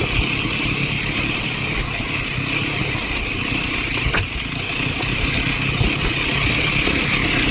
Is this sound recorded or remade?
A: recorded